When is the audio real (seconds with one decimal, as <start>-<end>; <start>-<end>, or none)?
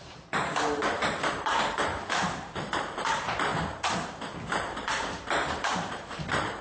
3.5-4.5